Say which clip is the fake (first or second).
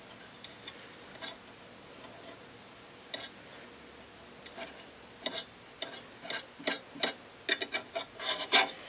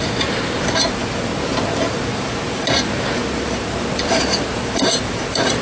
second